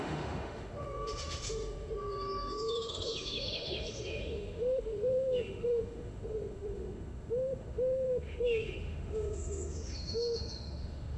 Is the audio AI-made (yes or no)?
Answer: yes